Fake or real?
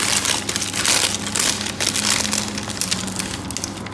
real